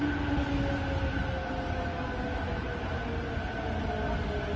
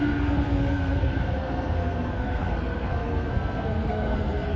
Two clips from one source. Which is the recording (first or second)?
first